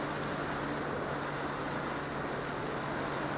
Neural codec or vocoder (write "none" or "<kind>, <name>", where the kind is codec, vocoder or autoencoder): vocoder, BigVGAN v2